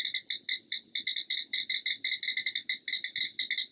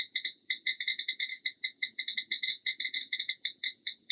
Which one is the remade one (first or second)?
second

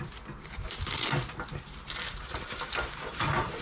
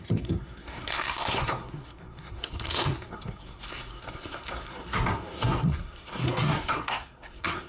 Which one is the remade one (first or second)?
second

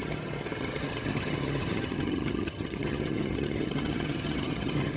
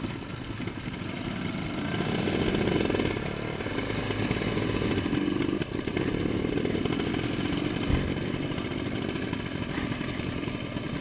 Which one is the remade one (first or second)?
first